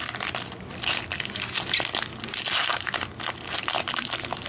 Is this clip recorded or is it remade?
recorded